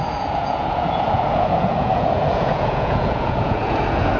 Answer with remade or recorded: remade